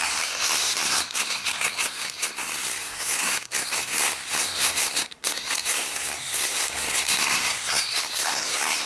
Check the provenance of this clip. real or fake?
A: fake